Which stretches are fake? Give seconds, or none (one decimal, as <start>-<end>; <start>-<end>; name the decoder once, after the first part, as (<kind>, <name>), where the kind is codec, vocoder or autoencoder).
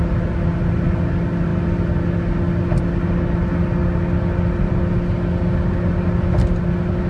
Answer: none